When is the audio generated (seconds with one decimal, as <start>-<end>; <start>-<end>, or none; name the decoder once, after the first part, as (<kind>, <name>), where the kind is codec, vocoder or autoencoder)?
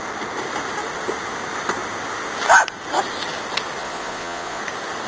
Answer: 3.8-4.6 (vocoder, Vocos)